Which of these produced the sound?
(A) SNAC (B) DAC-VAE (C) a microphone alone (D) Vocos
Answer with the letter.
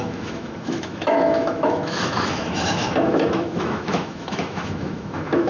B